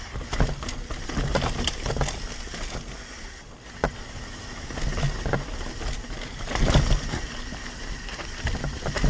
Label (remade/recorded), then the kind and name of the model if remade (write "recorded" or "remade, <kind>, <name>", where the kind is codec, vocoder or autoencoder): recorded